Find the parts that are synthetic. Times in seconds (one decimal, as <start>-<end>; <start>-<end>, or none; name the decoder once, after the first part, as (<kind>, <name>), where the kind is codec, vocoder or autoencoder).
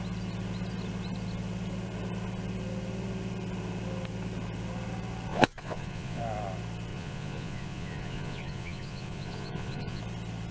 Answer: 5.3-6.2 (vocoder, Vocos); 6.9-10.0